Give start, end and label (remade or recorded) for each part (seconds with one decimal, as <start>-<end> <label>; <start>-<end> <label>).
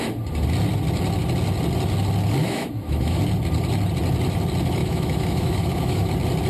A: 0.0-2.4 recorded; 2.4-3.2 remade; 3.2-4.8 recorded; 4.8-6.1 remade; 6.1-6.5 recorded